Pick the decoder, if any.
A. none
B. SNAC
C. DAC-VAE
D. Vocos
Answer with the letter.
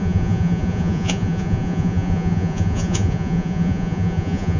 D